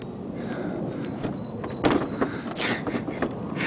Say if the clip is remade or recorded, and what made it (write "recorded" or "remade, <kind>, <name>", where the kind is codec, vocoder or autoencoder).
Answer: recorded